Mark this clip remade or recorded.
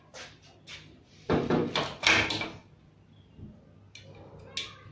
recorded